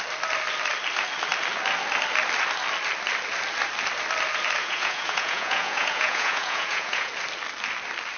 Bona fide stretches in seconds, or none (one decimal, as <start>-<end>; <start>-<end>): 0.0-4.6; 7.1-8.2